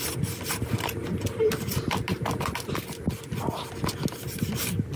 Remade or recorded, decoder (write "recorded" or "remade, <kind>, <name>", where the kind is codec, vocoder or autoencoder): recorded